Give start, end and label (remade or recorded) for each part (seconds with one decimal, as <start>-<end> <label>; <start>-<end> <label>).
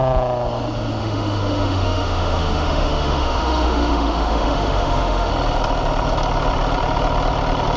0.0-1.0 recorded; 1.0-5.3 remade; 5.3-7.8 recorded